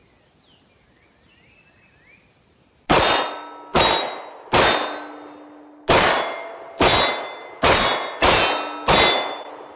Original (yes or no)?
yes